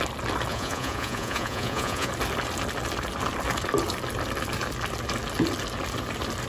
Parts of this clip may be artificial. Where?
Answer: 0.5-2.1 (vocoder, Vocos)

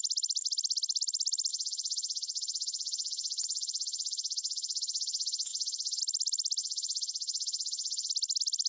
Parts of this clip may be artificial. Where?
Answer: 1.5-6.0 (vocoder, Vocos); 6.6-8.1

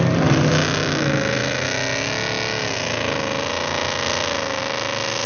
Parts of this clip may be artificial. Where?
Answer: none

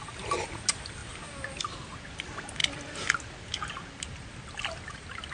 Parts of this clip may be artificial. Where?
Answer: none